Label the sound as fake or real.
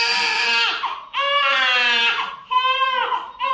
real